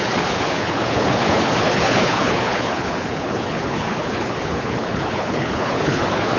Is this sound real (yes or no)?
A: no